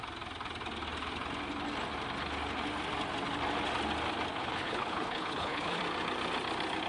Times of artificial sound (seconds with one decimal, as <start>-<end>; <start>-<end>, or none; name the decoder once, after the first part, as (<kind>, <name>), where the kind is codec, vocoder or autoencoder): 4.4-5.8 (codec, HILCodec)